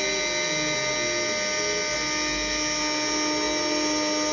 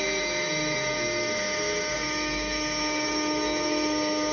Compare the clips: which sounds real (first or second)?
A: first